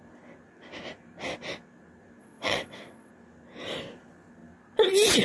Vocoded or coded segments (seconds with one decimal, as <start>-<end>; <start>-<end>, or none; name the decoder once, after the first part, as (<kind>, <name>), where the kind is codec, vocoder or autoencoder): 2.2-3.1 (vocoder, WaveNeXt)